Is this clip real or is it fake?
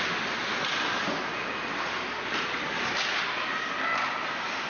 real